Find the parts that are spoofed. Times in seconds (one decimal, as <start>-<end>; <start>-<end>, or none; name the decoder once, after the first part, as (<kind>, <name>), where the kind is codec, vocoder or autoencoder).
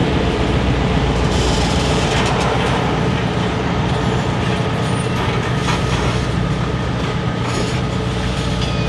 0.0-3.9 (vocoder, BigVGAN v2); 5.6-7.8